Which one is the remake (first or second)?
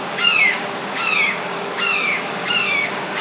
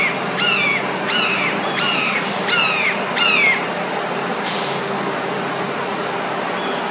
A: first